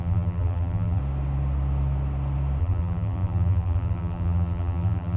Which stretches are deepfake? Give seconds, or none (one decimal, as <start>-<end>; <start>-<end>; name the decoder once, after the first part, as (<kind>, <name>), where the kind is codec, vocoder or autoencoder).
0.0-1.0 (vocoder, BigVGAN v2); 2.6-5.2